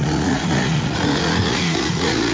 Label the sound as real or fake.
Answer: fake